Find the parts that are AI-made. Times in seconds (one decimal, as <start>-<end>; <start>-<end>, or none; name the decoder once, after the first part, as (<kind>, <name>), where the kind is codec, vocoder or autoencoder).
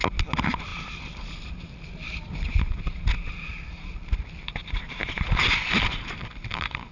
none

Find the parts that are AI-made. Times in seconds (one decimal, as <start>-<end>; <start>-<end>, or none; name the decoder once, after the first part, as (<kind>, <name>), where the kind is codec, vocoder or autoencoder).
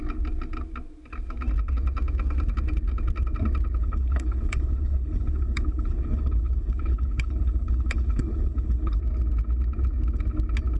3.8-9.0 (codec, HILCodec)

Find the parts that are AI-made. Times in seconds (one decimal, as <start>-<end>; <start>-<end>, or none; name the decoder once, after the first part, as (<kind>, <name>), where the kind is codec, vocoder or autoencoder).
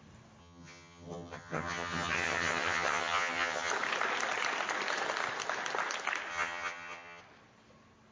0.4-3.7 (vocoder, HiFi-GAN); 6.3-7.2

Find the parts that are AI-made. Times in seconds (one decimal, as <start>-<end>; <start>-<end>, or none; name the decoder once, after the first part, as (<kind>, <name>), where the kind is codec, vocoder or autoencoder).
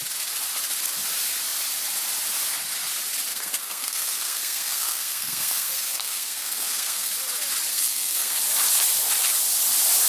3.3-7.1 (codec, SNAC); 7.7-8.4